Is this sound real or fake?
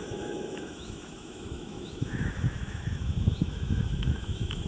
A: fake